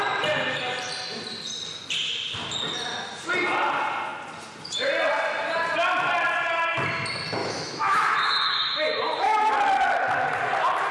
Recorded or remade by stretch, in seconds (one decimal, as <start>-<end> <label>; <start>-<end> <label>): 0.0-7.4 recorded; 7.4-9.5 remade; 9.5-10.9 recorded